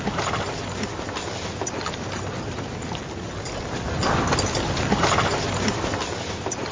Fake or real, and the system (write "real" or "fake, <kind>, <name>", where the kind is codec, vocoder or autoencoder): real